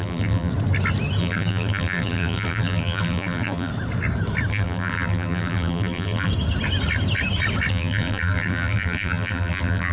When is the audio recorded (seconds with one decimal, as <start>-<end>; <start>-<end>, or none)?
0.5-1.2; 3.7-4.5; 6.3-7.7